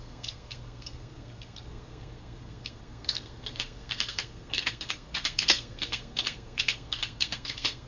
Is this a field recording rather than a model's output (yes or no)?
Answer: no